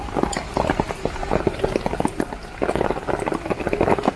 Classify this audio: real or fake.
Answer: real